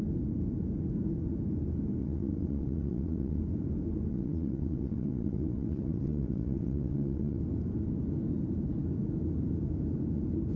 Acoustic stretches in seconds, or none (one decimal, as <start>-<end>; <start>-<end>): 0.0-2.0; 3.4-4.1; 7.4-10.6